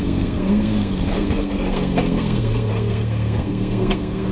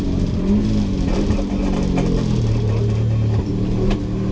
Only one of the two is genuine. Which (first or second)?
second